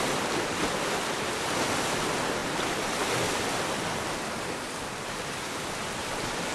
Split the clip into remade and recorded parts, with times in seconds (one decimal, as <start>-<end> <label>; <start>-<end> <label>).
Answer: 0.0-6.5 recorded